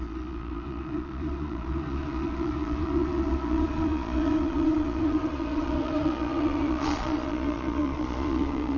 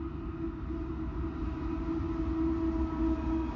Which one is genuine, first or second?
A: second